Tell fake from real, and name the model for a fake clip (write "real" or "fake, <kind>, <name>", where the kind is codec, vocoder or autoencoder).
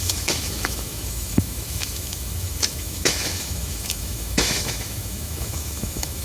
fake, autoencoder, DAC-VAE